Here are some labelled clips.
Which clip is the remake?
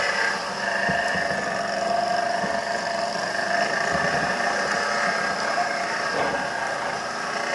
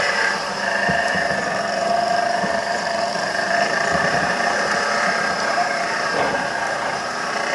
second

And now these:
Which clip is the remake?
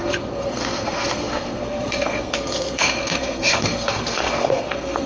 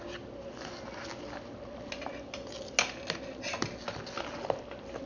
first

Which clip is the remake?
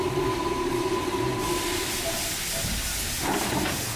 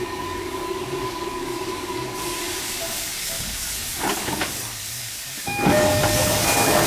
second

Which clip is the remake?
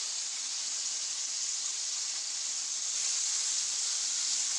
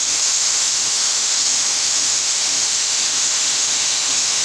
second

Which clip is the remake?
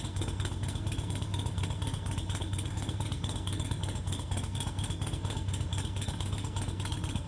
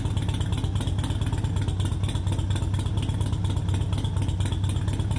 first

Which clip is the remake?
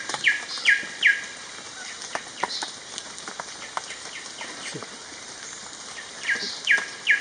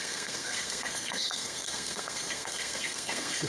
second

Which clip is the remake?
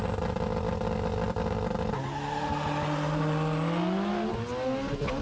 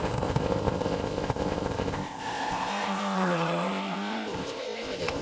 second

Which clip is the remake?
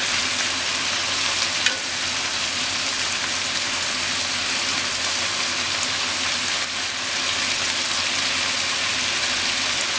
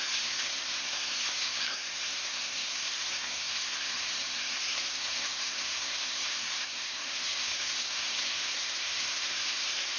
second